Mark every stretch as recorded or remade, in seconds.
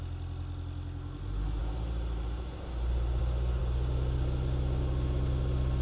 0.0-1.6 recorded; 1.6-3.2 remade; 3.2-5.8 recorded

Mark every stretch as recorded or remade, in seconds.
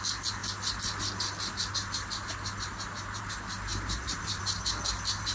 0.0-3.7 recorded; 3.7-4.4 remade; 4.4-5.3 recorded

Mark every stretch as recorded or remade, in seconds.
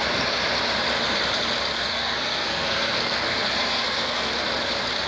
0.0-1.7 recorded; 1.7-4.3 remade; 4.3-5.1 recorded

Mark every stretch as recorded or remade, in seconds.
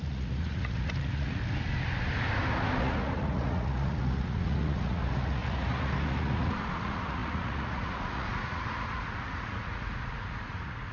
0.0-1.4 remade; 1.4-2.8 recorded; 2.8-10.9 remade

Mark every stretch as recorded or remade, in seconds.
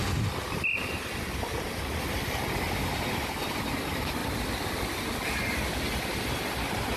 0.0-7.0 recorded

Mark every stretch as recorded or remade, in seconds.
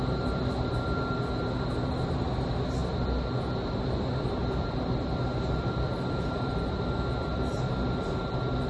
0.0-8.7 recorded